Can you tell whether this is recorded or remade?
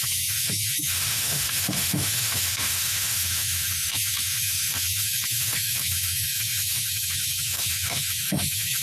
remade